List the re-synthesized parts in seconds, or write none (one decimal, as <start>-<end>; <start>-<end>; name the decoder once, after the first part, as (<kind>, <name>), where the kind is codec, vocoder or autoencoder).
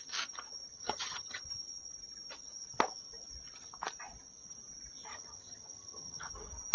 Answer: 0.7-1.4 (vocoder, HiFi-GAN); 5.1-6.3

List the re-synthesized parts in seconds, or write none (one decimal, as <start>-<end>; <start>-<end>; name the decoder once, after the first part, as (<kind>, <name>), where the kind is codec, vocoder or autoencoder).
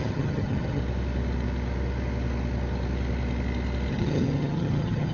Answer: 0.0-0.8 (vocoder, HiFi-GAN); 3.9-5.1